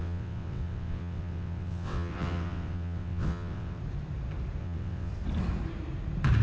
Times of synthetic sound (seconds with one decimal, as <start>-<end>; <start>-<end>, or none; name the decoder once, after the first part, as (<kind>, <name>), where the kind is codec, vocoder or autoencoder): 0.0-3.8 (vocoder, WaveNeXt); 4.6-5.1